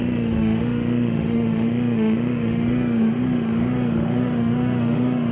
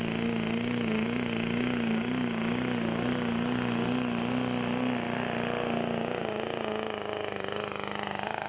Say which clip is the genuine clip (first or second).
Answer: second